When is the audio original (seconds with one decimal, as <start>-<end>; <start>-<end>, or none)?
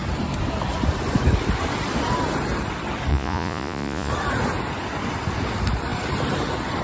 0.0-3.1; 4.1-6.8